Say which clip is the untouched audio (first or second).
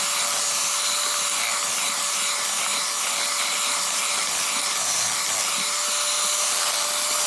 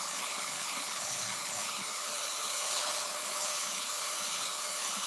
first